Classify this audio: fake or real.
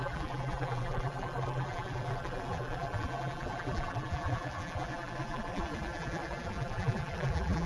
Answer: fake